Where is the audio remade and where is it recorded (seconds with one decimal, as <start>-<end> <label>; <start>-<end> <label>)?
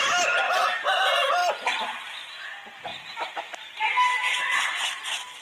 0.0-2.9 recorded; 2.9-3.9 remade; 3.9-5.4 recorded